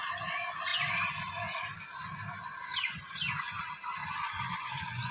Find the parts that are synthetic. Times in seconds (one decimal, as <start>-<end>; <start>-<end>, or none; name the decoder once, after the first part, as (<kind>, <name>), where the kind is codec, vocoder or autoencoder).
4.0-5.1 (vocoder, Vocos)